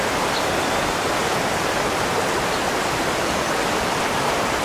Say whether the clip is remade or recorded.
recorded